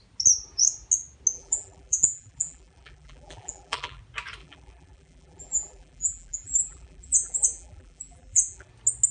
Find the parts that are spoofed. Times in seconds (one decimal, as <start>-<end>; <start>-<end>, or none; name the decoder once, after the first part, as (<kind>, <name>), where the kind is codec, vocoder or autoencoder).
1.3-4.0 (vocoder, BigVGAN v2); 4.4-8.7